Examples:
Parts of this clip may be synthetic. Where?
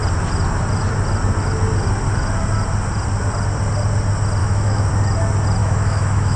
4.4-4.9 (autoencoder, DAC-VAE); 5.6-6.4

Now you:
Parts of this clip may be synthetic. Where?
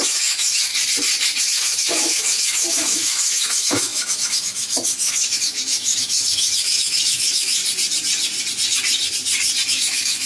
0.0-0.7 (autoencoder, DAC-VAE); 1.4-7.6; 9.7-10.3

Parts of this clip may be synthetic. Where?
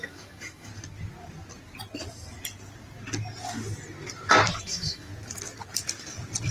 0.0-0.7 (autoencoder, DAC-VAE); 4.6-5.1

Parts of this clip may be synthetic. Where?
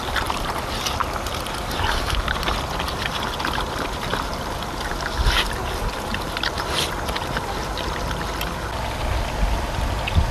none